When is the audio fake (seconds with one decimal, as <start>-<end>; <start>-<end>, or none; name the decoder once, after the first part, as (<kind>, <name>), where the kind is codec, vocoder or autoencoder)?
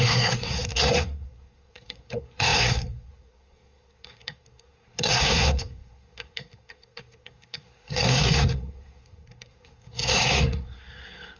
0.0-11.4 (codec, SNAC)